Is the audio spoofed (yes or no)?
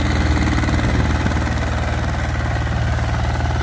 no